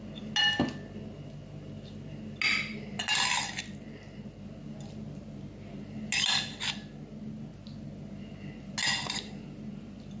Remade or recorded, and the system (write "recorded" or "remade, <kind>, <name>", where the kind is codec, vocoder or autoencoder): recorded